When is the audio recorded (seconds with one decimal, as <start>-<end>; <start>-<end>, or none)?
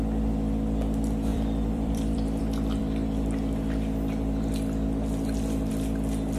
0.0-1.3; 2.4-6.4